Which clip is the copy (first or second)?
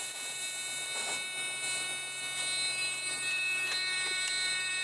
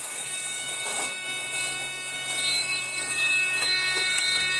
second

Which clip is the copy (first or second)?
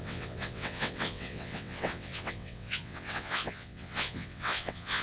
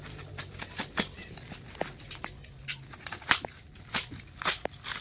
first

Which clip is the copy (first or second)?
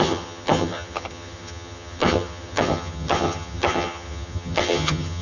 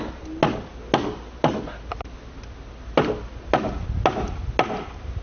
first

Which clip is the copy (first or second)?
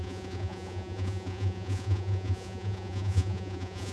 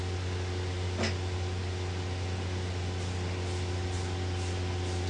first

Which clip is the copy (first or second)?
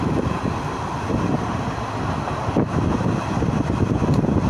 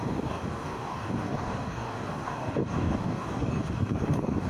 second